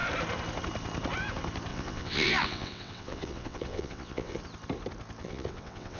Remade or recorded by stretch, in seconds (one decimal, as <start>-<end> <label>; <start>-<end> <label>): 0.0-1.7 recorded; 1.7-4.4 remade; 4.4-5.2 recorded; 5.2-6.0 remade